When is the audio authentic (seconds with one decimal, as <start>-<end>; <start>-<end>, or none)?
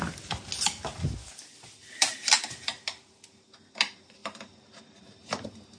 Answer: 0.0-2.0; 2.8-4.2; 5.0-5.8